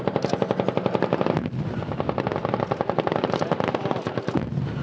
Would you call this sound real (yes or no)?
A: yes